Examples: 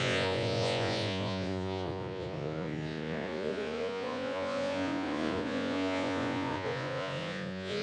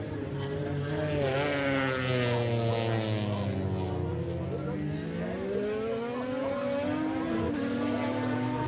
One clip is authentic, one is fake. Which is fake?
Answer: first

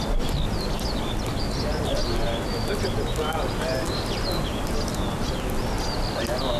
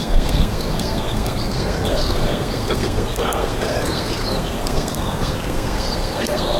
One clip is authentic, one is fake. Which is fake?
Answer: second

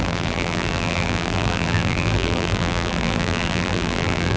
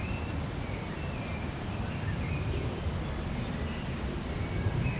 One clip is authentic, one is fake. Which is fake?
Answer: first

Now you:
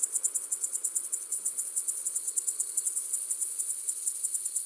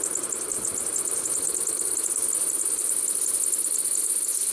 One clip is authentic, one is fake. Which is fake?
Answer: first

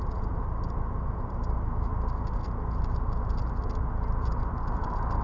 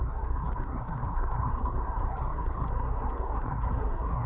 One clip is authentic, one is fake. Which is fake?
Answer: second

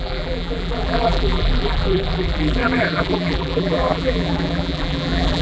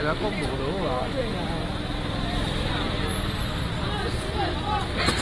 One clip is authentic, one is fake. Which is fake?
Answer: first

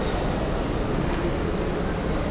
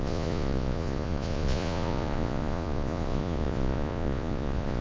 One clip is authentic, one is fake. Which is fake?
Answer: second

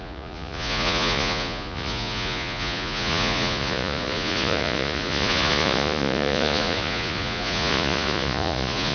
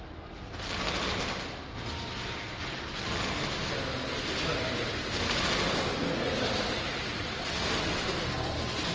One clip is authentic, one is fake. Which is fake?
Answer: first